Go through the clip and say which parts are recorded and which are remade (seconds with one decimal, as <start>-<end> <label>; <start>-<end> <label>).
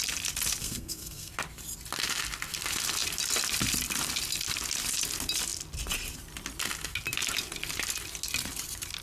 0.0-0.6 recorded; 0.6-1.3 remade; 1.3-9.0 recorded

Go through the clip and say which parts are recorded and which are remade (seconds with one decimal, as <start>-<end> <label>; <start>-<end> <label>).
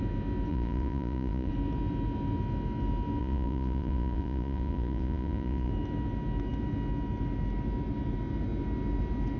0.0-0.5 recorded; 0.5-1.5 remade; 1.5-3.2 recorded; 3.2-5.7 remade; 5.7-9.4 recorded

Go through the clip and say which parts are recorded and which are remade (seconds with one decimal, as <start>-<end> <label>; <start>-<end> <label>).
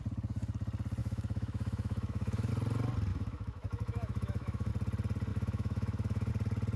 0.0-1.0 recorded; 1.0-2.5 remade; 2.5-3.1 recorded; 3.1-4.7 remade; 4.7-5.3 recorded; 5.3-6.3 remade; 6.3-6.8 recorded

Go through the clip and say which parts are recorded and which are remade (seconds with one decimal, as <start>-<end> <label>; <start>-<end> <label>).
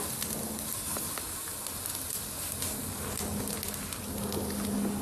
0.0-5.0 recorded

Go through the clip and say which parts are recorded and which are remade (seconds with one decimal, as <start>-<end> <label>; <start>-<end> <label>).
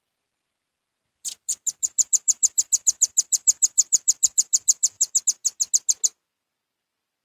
0.0-0.9 recorded; 0.9-5.2 remade; 5.2-7.2 recorded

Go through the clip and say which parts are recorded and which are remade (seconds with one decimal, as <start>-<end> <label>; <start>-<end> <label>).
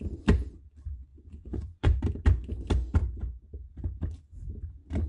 0.0-1.1 recorded; 1.1-2.0 remade; 2.0-5.1 recorded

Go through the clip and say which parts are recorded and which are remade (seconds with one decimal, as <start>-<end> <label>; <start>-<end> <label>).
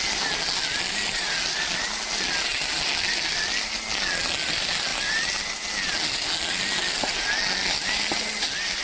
0.0-8.8 recorded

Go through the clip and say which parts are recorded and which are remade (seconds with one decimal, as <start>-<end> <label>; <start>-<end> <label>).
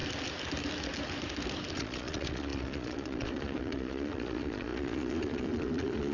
0.0-1.7 recorded; 1.7-6.1 remade